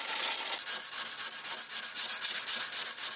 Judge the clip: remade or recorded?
recorded